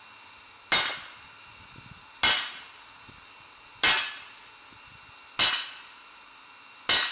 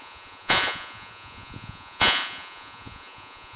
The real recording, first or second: first